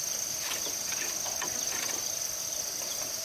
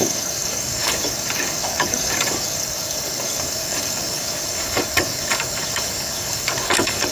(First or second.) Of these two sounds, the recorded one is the first